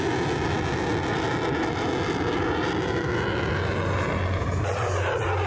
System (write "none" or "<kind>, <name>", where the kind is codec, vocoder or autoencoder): none